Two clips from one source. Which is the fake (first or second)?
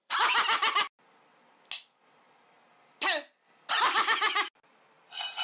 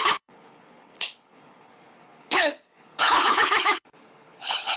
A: second